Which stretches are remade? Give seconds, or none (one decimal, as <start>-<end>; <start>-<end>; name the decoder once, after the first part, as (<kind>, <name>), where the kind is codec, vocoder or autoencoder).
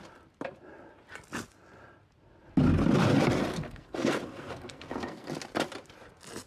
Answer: 3.5-5.3 (codec, SNAC)